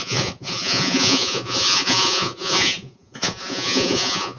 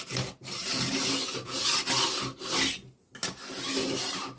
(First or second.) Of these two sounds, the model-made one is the first